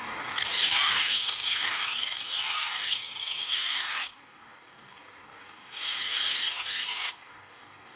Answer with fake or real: fake